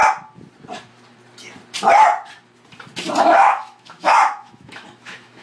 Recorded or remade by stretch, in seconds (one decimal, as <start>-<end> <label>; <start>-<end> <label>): 0.0-3.2 recorded; 3.2-5.4 remade